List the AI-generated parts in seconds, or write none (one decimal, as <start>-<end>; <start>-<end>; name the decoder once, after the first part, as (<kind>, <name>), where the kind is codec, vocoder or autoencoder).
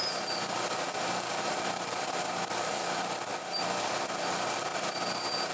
1.5-3.3 (vocoder, BigVGAN v2); 4.3-4.7